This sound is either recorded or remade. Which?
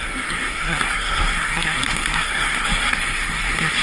remade